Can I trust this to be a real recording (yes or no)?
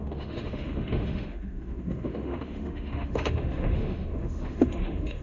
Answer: no